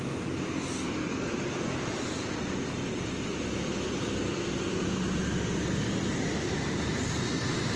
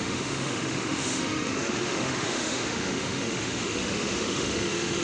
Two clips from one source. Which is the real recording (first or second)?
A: first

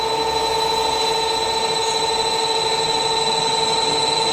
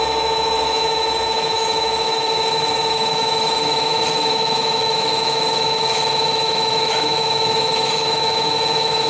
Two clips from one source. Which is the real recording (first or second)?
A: first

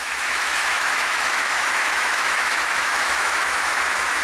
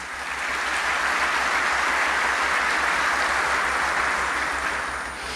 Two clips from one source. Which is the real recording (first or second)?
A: second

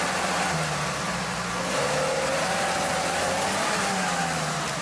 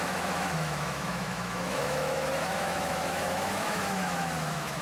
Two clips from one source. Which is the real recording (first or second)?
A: first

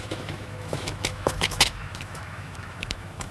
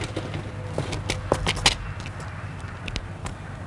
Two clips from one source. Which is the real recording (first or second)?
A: second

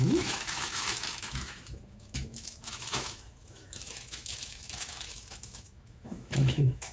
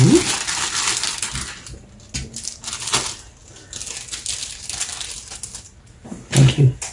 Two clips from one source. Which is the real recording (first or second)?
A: second